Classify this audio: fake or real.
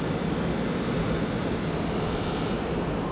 real